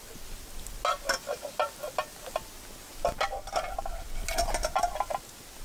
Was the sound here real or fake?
real